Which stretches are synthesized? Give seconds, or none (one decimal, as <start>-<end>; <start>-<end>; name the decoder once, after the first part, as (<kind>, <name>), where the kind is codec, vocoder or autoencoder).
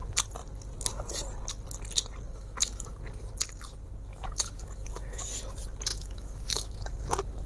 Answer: 2.3-3.0 (autoencoder, DAC-VAE); 4.1-5.2; 5.9-6.8